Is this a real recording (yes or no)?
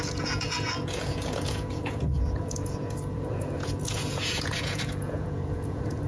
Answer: no